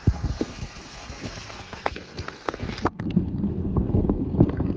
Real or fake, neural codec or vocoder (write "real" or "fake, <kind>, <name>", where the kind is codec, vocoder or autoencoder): fake, codec, SNAC